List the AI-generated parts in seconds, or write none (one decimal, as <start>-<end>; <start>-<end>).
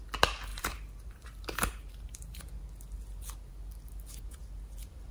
0.5-2.4